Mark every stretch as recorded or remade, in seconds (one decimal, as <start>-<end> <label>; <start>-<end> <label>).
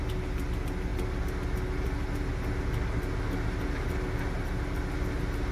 0.0-5.5 recorded